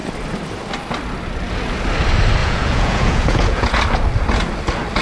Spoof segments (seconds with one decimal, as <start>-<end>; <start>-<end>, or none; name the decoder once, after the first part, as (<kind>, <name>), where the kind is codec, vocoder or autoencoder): 2.4-3.8 (vocoder, Vocos)